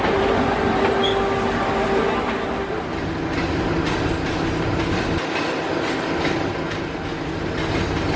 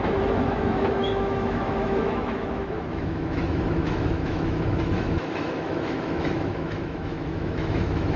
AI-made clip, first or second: second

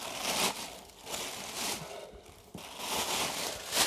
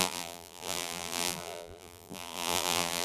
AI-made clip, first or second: second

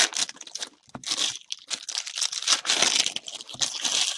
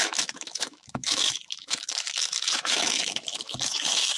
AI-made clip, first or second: second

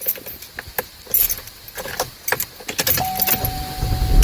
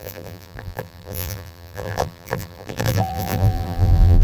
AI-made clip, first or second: second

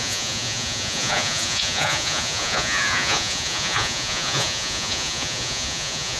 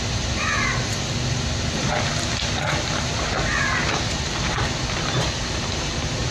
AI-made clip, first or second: first